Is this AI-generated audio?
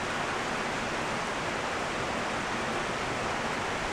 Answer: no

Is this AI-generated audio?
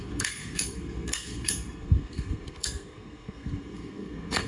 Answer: yes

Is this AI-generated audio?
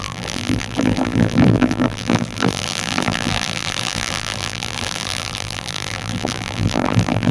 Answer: yes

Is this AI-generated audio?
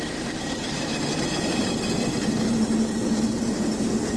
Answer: yes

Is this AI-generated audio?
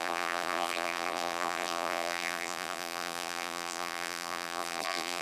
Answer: yes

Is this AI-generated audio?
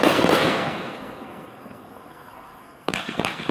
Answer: yes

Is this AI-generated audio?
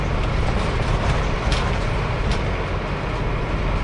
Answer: no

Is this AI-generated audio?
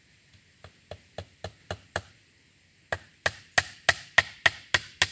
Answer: no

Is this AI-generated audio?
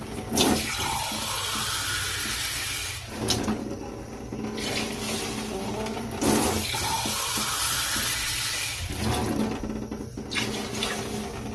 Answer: no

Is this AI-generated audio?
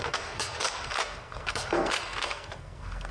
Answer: yes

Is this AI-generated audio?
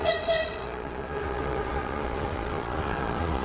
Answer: yes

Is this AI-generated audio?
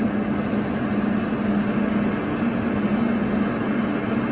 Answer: no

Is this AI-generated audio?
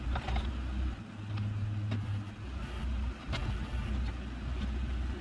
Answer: no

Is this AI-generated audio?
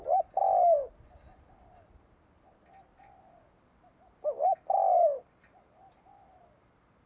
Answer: no